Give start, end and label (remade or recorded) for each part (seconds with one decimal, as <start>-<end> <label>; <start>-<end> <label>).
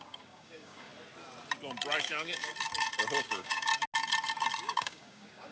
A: 0.0-0.9 remade; 0.9-2.0 recorded; 2.0-2.5 remade; 2.5-3.2 recorded; 3.2-3.7 remade; 3.7-4.6 recorded; 4.6-5.5 remade